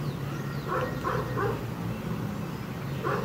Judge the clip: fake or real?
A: real